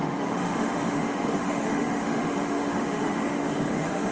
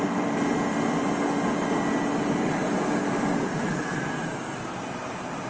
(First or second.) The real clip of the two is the second